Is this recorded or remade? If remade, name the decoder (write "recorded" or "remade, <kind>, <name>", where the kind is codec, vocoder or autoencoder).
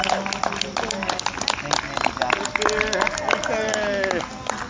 recorded